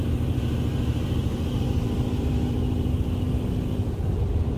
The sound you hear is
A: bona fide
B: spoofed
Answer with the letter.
B